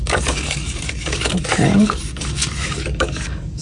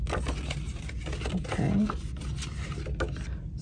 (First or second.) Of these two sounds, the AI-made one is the first